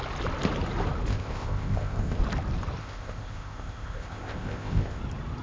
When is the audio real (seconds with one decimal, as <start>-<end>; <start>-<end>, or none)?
0.0-1.1; 2.2-2.8; 5.0-5.4